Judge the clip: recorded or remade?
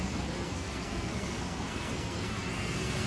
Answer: remade